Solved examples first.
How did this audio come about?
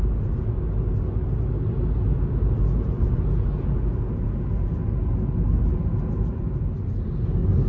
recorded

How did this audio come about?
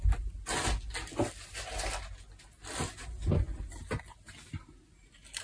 recorded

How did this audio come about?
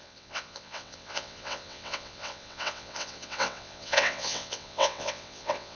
remade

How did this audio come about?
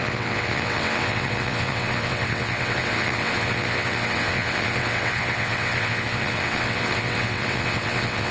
remade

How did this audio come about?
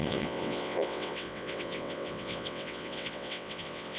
remade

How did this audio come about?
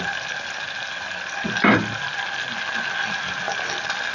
recorded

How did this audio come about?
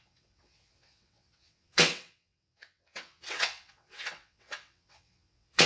remade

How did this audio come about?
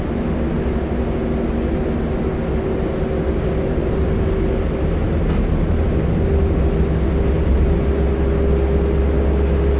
recorded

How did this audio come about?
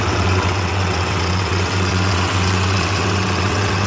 remade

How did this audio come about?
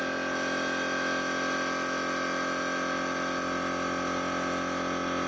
recorded